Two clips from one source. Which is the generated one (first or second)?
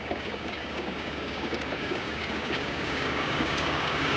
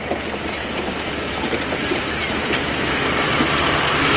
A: first